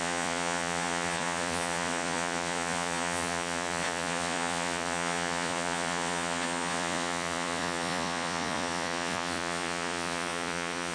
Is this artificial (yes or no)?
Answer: yes